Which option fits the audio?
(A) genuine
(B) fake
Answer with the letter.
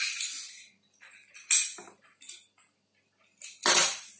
A